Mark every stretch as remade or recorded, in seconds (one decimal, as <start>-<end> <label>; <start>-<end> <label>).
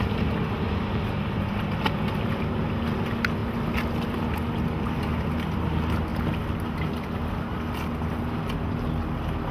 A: 0.0-9.5 recorded